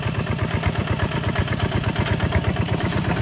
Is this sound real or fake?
fake